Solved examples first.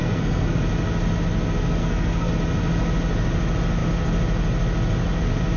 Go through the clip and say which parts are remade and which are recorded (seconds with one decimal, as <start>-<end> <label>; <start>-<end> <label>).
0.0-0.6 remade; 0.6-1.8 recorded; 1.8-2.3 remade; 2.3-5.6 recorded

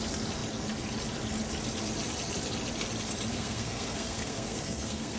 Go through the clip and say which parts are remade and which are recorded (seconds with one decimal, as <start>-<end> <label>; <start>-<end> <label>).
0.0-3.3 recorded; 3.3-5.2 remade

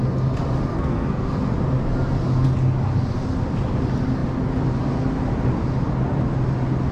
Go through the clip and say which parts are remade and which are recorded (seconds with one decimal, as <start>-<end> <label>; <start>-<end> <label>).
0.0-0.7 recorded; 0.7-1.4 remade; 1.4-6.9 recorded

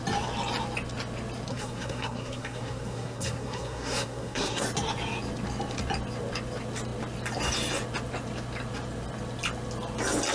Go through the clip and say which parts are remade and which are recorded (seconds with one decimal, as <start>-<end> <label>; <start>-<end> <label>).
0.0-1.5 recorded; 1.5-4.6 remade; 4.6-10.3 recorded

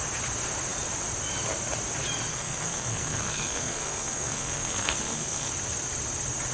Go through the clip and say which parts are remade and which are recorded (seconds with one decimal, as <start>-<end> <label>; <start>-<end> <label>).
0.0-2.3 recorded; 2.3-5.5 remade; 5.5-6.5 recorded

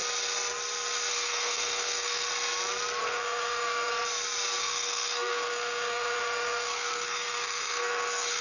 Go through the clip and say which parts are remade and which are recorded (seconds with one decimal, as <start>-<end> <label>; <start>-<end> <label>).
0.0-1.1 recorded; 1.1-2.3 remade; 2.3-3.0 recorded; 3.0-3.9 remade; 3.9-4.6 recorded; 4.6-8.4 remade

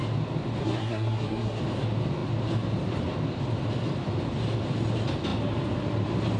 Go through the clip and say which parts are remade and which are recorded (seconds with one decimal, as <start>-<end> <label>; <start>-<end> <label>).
0.0-0.6 recorded; 0.6-1.6 remade; 1.6-6.4 recorded